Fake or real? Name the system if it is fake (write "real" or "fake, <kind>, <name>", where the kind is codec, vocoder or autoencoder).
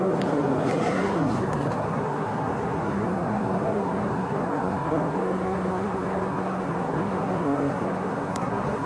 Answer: fake, codec, SNAC